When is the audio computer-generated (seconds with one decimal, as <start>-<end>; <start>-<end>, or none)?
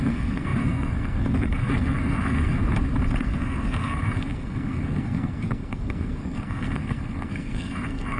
0.0-2.6; 3.2-8.2